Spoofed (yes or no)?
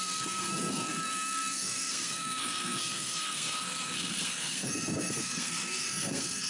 yes